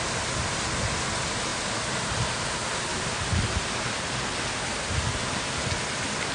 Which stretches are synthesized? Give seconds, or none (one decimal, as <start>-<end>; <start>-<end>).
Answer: 2.9-4.3